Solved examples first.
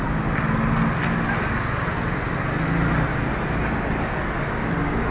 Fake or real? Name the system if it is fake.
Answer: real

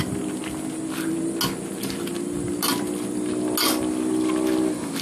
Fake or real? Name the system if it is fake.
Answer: real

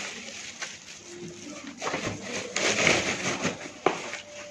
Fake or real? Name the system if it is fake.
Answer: real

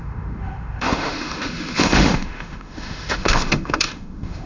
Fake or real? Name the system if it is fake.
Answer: fake, autoencoder, DAC-VAE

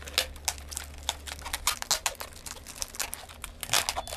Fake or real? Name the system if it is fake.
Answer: real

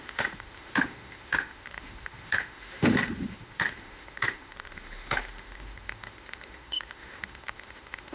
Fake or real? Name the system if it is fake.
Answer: fake, autoencoder, DAC-VAE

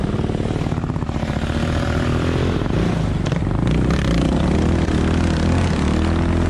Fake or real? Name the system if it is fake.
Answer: real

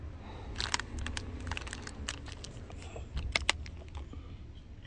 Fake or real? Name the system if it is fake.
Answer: real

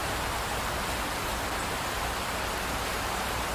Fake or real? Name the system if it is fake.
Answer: real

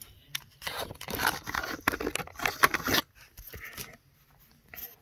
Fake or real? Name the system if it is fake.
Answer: real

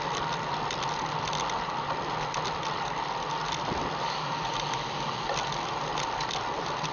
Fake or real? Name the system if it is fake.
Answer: real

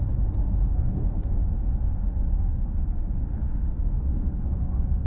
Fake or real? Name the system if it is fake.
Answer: fake, autoencoder, DAC-VAE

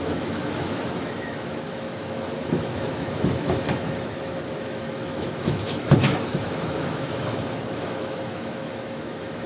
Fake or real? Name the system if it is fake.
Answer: fake, autoencoder, DAC-VAE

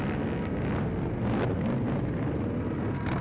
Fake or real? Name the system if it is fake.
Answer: real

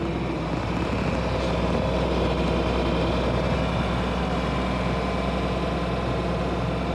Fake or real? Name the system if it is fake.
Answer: real